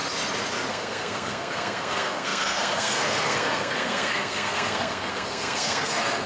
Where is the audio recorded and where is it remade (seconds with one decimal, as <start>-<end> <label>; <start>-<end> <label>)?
0.0-0.7 recorded; 0.7-6.3 remade